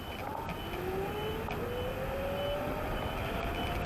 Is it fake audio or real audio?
real